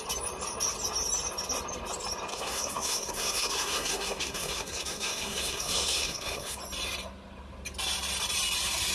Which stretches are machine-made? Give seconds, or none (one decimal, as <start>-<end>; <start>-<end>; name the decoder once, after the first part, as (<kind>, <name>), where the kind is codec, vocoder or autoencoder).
2.3-6.6 (codec, SNAC)